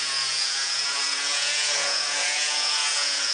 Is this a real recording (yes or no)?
no